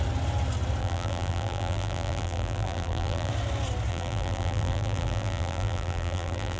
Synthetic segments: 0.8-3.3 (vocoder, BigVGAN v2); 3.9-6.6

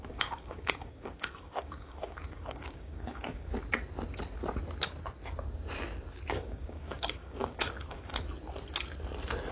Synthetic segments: 0.0-3.5 (codec, DAC); 6.3-8.1

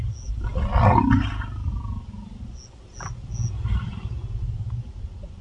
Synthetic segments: none

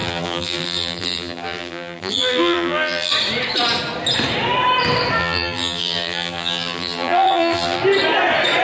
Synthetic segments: 0.0-3.1 (vocoder, BigVGAN v2); 5.2-7.8

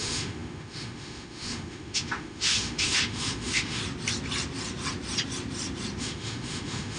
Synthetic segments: 0.0-3.8 (autoencoder, DAC-VAE); 6.0-7.0

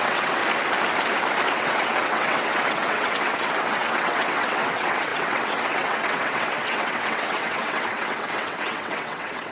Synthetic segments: 0.0-0.4 (vocoder, WaveNeXt); 1.5-9.5